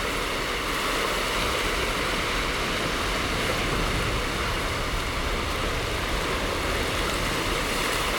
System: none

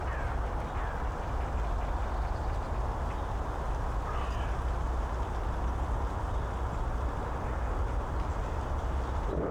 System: none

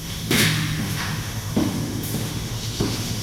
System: autoencoder, DAC-VAE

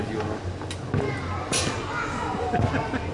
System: none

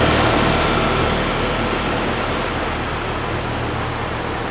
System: none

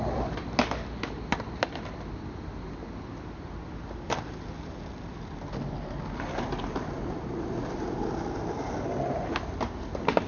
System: none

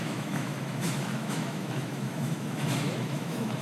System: autoencoder, DAC-VAE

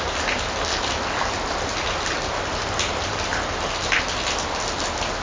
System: none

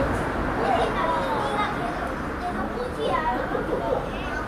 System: none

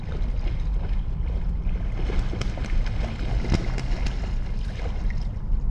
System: none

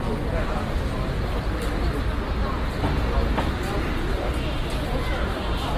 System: none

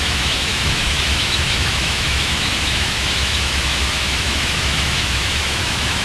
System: autoencoder, DAC-VAE